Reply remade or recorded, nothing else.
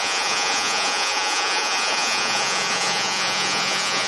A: remade